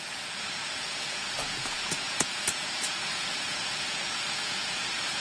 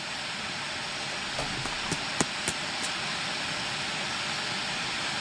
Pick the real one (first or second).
second